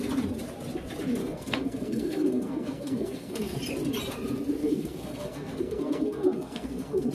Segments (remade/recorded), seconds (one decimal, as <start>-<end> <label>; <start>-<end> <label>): 0.0-1.2 recorded; 1.2-3.6 remade; 3.6-4.6 recorded; 4.6-7.1 remade